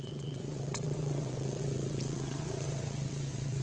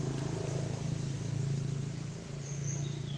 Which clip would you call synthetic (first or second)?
first